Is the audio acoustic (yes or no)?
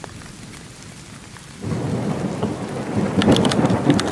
yes